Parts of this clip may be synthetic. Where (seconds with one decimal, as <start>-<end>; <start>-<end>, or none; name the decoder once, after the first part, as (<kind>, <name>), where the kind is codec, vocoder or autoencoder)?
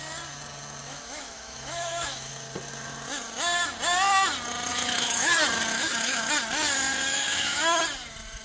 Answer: 0.8-2.3 (autoencoder, DAC-VAE); 4.7-5.3; 5.7-6.3; 7.1-7.8